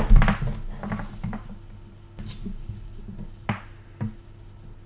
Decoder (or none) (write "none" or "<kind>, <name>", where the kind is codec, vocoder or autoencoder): none